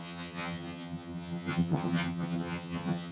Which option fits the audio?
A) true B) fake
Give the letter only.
B